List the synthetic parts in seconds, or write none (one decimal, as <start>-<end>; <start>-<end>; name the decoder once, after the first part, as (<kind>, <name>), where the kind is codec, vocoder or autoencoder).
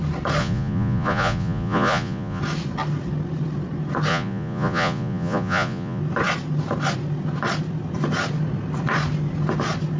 0.4-2.4 (vocoder, Vocos); 4.1-6.0